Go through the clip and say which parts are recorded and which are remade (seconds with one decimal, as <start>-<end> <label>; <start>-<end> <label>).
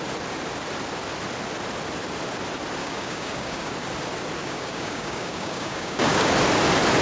0.0-2.8 recorded; 2.8-3.7 remade; 3.7-4.4 recorded; 4.4-6.3 remade; 6.3-7.0 recorded